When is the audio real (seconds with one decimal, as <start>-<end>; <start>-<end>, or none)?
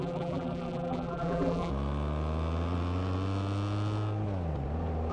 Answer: 1.7-5.1